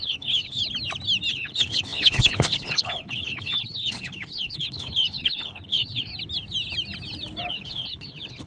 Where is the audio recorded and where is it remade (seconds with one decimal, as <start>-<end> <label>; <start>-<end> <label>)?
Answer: 0.0-0.6 remade; 0.6-1.3 recorded; 1.3-6.1 remade; 6.1-7.5 recorded; 7.5-8.5 remade